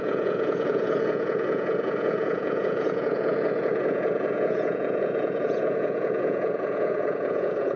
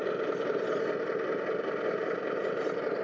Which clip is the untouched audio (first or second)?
second